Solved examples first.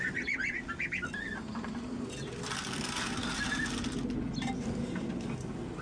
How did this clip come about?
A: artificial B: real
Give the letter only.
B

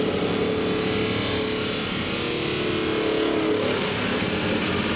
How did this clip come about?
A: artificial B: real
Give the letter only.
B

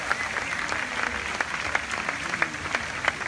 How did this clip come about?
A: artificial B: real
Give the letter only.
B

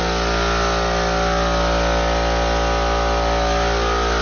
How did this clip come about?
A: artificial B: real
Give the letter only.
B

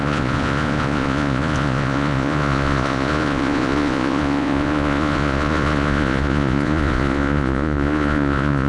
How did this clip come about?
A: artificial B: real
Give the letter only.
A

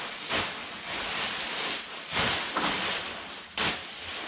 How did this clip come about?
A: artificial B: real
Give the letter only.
B